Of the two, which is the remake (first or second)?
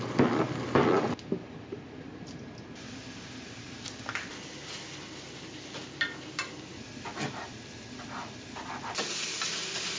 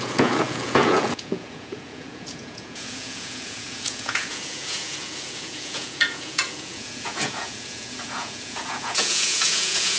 second